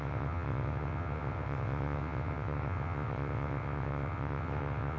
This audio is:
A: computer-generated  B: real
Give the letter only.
A